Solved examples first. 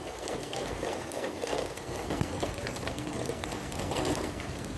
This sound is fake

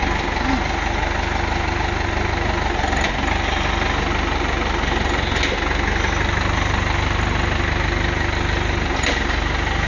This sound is real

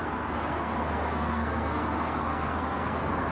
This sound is fake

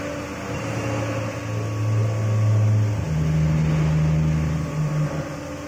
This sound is real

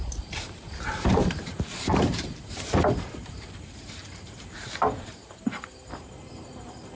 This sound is fake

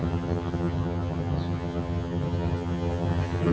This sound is fake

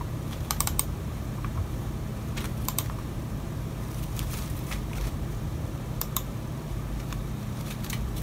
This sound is fake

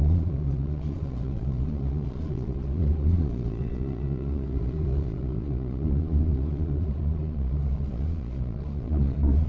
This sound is fake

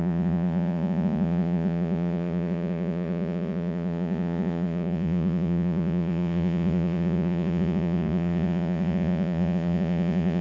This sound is fake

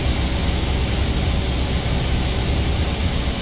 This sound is real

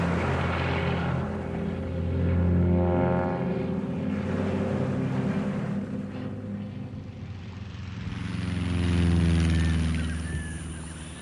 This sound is real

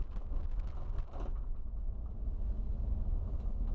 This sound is real